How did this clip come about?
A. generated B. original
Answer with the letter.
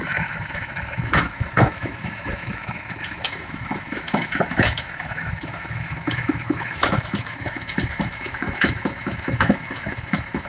A